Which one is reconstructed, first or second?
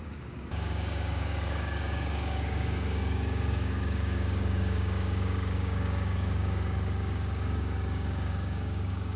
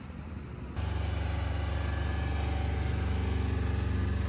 first